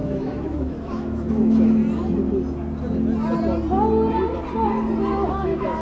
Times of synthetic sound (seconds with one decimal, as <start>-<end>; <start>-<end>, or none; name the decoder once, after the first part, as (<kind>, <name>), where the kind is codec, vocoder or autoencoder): 0.0-1.8 (autoencoder, DAC-VAE); 5.3-5.8